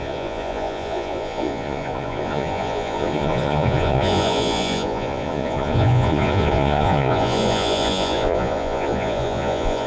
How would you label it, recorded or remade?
remade